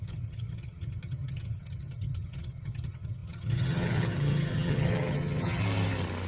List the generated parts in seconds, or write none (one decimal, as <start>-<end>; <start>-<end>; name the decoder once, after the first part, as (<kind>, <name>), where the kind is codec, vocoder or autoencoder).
0.0-5.6 (vocoder, HiFi-GAN)